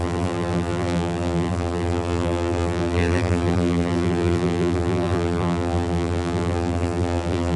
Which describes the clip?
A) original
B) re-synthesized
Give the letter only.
B